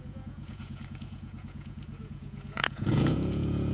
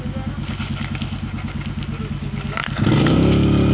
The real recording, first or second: second